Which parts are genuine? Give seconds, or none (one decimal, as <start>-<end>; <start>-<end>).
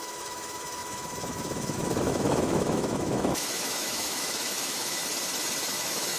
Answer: 5.0-5.7